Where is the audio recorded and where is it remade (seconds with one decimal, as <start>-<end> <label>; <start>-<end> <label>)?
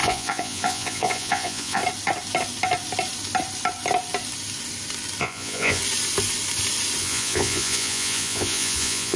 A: 0.0-1.8 remade; 1.8-5.2 recorded; 5.2-5.8 remade; 5.8-7.0 recorded; 7.0-9.2 remade